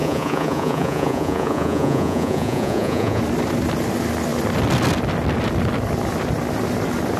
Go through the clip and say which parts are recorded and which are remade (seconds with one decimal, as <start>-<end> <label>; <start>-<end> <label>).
0.0-3.2 remade; 3.2-7.2 recorded